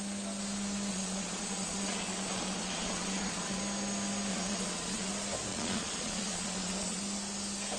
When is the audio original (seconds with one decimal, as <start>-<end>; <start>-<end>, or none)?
0.0-0.9; 3.6-4.3; 5.1-5.5; 7.0-7.8